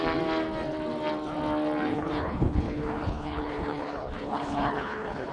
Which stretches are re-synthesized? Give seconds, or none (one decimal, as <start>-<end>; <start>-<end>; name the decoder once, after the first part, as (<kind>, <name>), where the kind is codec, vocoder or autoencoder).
1.9-5.3 (codec, HILCodec)